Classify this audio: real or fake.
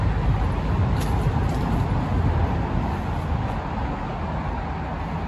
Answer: real